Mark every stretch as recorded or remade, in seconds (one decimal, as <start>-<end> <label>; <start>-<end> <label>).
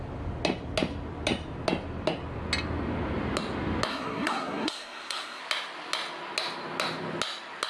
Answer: 0.0-3.9 recorded; 3.9-5.4 remade; 5.4-7.7 recorded